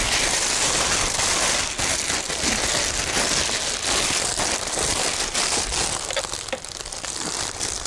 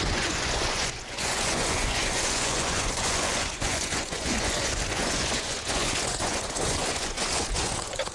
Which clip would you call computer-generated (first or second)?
second